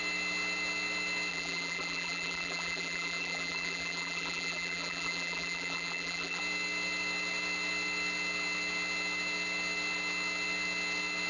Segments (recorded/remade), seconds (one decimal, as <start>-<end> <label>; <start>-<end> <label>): 0.0-1.3 recorded; 1.3-6.4 remade; 6.4-11.3 recorded